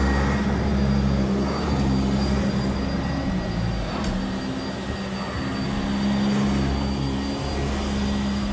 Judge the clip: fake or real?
real